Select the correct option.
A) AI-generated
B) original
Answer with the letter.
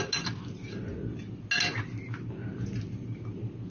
B